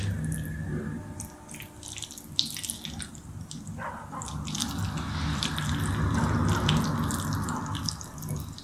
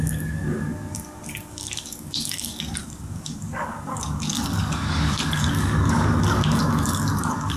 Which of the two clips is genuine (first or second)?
first